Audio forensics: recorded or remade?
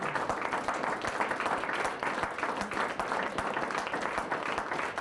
recorded